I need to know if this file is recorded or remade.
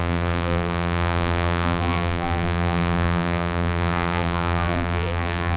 remade